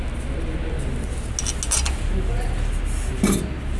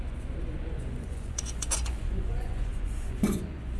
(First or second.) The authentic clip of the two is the first